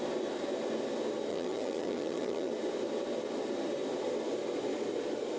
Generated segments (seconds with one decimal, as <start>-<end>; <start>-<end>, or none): 1.3-2.5